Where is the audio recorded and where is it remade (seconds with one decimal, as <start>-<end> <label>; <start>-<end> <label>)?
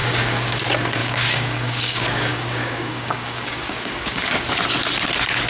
0.0-0.6 remade; 0.6-1.0 recorded; 1.0-4.3 remade; 4.3-5.5 recorded